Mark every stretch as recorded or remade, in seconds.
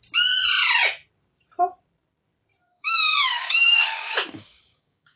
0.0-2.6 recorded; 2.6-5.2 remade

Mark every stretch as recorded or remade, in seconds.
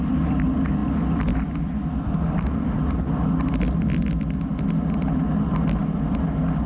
0.0-6.7 recorded